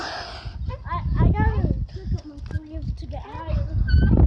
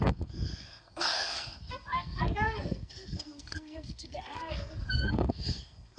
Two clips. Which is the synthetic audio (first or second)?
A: second